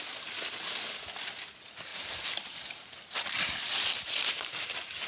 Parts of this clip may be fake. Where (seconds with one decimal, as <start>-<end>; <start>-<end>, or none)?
1.9-5.1